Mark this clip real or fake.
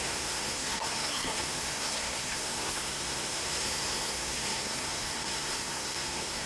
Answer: fake